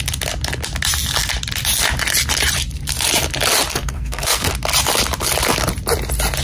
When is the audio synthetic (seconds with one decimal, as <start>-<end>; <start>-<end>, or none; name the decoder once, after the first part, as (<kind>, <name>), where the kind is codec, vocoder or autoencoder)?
3.7-4.5 (codec, SNAC)

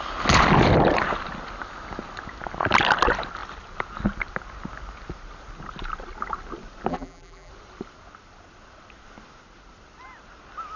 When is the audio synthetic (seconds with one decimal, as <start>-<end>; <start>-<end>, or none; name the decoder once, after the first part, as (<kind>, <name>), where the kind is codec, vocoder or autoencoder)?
6.9-7.5 (vocoder, BigVGAN v2)

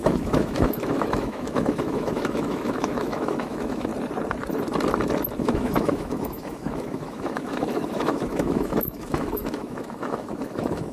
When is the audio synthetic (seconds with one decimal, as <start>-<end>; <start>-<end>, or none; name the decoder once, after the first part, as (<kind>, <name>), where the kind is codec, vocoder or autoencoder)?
0.0-3.9 (autoencoder, DAC-VAE); 5.4-10.9

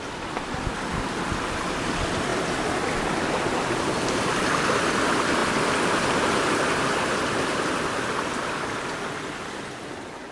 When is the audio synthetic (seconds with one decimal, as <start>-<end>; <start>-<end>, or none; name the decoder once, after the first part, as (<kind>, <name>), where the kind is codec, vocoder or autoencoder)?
none

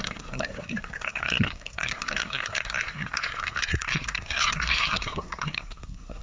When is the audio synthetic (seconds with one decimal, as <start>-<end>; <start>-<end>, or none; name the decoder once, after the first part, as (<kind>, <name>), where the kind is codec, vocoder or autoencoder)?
0.0-6.2 (codec, SNAC)

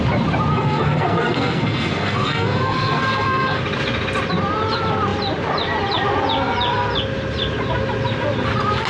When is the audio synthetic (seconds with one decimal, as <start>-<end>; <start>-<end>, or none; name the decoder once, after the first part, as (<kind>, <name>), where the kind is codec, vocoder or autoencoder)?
0.5-3.6 (codec, SNAC)